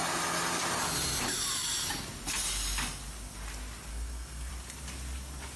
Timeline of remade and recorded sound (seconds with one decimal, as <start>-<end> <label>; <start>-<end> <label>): 0.0-3.9 recorded; 3.9-4.5 remade; 4.5-5.6 recorded